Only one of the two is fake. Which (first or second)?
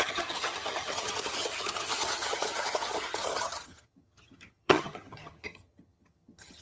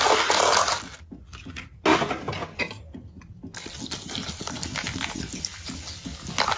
first